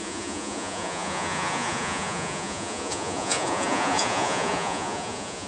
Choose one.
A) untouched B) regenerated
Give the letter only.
B